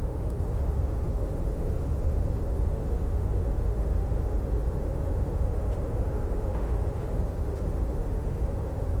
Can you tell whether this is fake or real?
fake